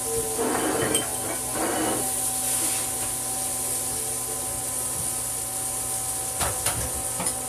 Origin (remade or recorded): recorded